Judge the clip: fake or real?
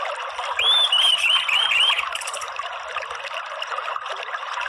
real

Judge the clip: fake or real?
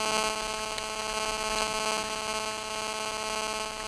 real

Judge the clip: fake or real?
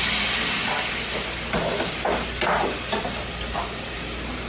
real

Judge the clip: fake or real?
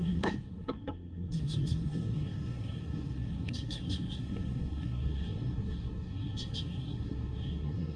fake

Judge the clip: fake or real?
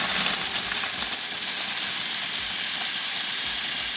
real